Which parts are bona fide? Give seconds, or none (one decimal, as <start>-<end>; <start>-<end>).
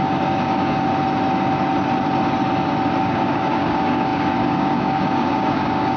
0.9-3.0